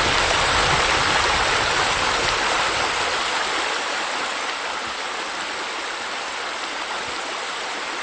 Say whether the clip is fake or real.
real